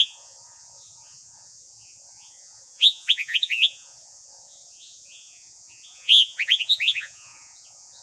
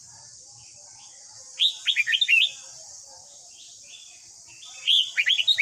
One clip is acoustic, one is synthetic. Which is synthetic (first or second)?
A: first